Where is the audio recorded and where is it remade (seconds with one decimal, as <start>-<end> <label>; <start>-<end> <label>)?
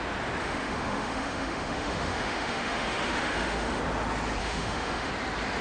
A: 0.0-0.4 recorded; 0.4-3.8 remade; 3.8-4.4 recorded; 4.4-5.1 remade; 5.1-5.6 recorded